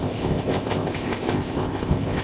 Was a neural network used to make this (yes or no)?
yes